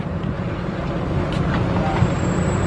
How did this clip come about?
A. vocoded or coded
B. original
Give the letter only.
B